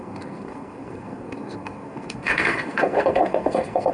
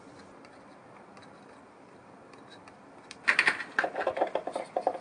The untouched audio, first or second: second